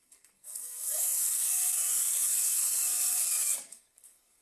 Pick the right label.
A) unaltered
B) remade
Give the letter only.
B